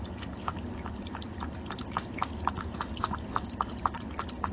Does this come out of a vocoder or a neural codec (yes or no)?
no